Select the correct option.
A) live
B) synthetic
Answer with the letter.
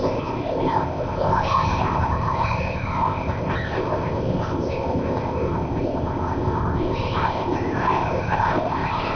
B